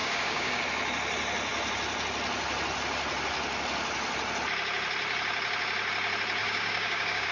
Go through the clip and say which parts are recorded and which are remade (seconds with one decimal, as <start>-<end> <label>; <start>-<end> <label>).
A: 0.0-0.6 remade; 0.6-6.4 recorded; 6.4-7.3 remade